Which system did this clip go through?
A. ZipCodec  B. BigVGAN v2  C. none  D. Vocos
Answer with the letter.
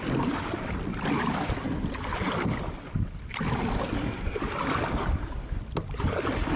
C